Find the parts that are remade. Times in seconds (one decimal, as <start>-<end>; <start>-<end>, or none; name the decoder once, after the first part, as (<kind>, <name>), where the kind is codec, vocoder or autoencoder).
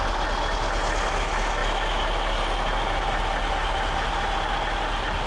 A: none